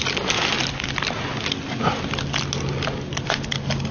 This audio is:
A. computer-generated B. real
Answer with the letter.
B